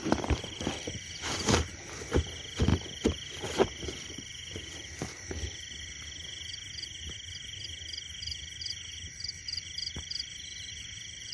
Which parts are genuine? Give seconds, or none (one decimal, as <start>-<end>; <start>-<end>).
0.0-11.3